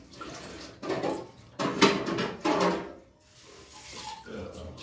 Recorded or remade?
recorded